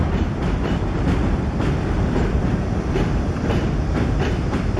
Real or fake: fake